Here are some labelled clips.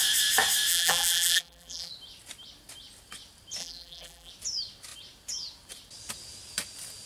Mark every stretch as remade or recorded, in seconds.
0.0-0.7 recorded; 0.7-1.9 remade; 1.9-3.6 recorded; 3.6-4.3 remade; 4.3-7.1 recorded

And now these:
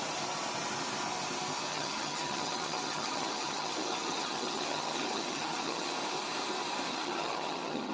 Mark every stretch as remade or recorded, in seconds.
0.0-1.7 recorded; 1.7-5.9 remade; 5.9-6.9 recorded; 6.9-7.9 remade

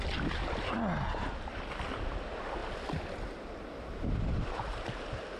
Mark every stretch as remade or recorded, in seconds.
0.0-5.4 recorded

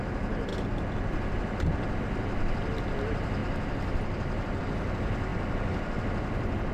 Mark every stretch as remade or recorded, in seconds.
0.0-3.4 recorded; 3.4-4.6 remade; 4.6-5.3 recorded; 5.3-6.0 remade; 6.0-6.7 recorded

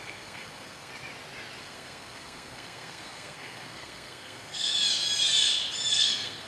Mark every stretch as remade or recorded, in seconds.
0.0-0.9 remade; 0.9-1.6 recorded; 1.6-4.7 remade; 4.7-5.9 recorded; 5.9-6.5 remade